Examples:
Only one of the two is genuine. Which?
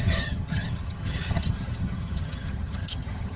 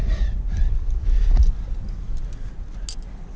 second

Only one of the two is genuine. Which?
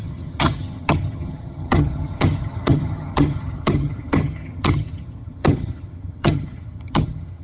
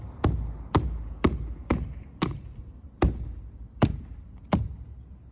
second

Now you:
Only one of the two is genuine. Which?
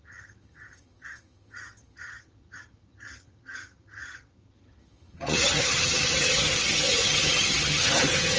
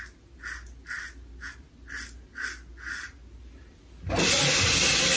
second